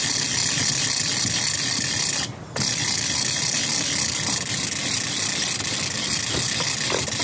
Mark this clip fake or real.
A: real